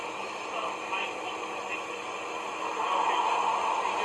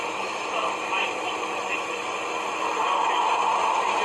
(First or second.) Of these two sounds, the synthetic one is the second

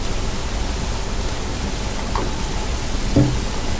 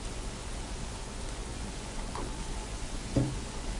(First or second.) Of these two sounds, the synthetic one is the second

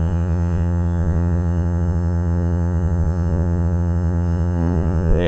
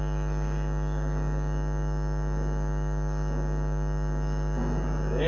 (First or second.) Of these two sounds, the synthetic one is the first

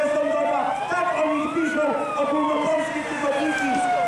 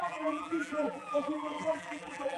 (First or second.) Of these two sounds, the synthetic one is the second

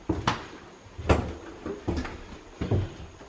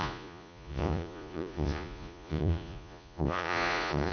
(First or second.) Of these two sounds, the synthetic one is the second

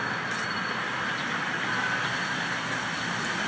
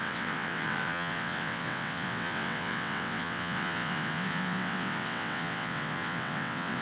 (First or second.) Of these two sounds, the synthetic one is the second